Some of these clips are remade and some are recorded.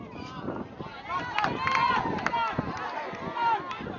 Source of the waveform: recorded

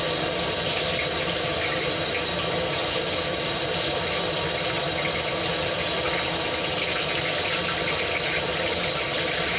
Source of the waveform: recorded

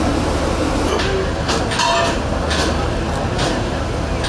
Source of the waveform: recorded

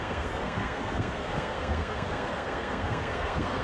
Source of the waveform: remade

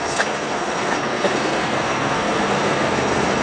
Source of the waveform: remade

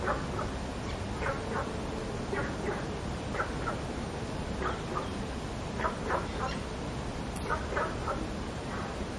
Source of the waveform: recorded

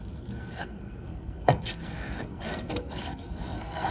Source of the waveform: remade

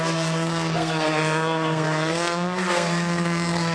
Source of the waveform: remade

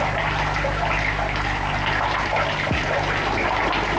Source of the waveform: recorded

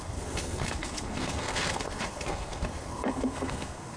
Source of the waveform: remade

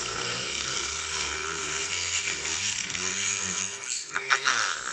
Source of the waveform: remade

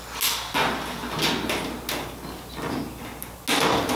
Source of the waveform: recorded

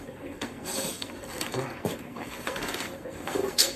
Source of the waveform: remade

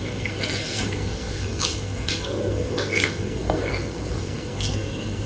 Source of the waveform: remade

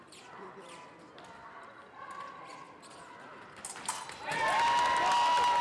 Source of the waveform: recorded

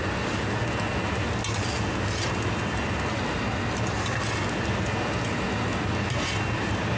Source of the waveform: recorded